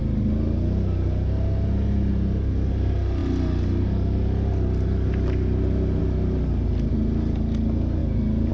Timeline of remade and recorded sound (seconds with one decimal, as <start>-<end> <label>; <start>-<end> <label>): 0.0-8.5 recorded